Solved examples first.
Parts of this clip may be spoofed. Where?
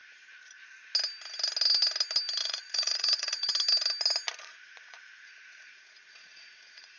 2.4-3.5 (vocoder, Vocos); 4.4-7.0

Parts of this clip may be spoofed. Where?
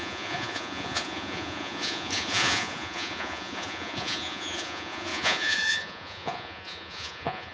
0.0-7.5 (vocoder, Vocos)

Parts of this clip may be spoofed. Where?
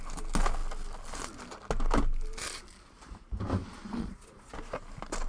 3.9-4.5 (vocoder, Vocos)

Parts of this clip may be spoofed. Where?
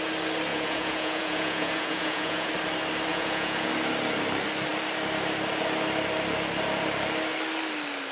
0.5-2.5 (vocoder, Vocos); 3.1-3.7